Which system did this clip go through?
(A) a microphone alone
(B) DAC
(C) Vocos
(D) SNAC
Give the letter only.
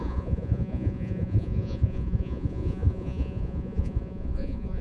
C